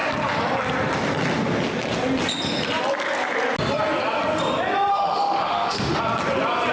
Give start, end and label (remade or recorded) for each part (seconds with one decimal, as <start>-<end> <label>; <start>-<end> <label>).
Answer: 0.0-4.9 recorded; 4.9-6.0 remade; 6.0-6.7 recorded